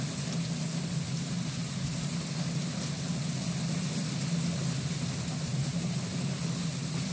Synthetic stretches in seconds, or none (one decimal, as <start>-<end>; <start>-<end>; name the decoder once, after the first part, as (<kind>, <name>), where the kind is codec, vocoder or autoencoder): 5.5-6.0 (vocoder, BigVGAN v2)